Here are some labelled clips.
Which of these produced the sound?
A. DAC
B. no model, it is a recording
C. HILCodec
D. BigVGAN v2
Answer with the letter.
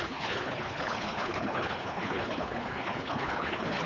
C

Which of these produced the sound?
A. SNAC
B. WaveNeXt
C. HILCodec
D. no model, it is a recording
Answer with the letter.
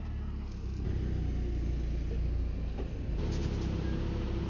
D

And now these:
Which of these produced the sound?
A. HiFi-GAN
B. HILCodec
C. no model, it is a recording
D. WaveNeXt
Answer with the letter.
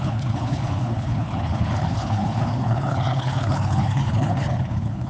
B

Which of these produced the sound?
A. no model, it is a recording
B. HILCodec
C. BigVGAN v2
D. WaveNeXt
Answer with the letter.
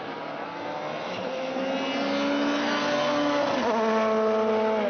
A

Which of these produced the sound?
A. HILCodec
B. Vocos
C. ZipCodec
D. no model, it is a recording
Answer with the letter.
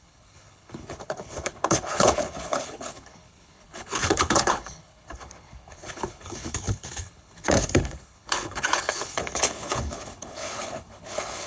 A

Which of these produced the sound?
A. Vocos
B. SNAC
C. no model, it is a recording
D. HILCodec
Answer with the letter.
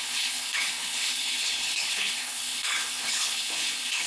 D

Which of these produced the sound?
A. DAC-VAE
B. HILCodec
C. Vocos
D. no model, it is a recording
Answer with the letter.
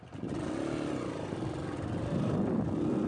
D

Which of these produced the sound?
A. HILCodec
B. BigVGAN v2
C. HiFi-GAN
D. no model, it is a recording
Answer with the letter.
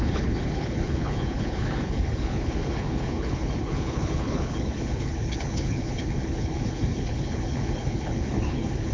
A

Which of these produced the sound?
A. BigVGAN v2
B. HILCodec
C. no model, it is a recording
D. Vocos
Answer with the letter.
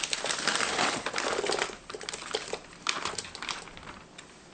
C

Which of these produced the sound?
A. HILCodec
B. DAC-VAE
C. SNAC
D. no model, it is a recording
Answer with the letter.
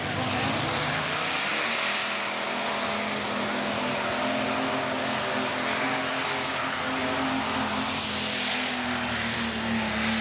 D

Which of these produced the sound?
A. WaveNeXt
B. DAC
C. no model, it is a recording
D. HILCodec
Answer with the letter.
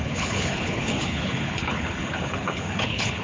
D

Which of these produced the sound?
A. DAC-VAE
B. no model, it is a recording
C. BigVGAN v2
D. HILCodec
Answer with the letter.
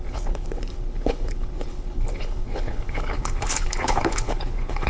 D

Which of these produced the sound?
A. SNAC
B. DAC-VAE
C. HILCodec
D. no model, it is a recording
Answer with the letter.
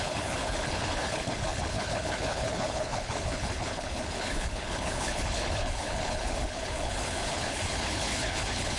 C